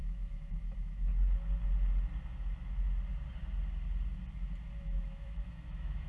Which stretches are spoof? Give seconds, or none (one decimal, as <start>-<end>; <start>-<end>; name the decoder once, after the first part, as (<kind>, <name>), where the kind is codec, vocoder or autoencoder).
0.0-1.1 (autoencoder, DAC-VAE); 4.8-6.1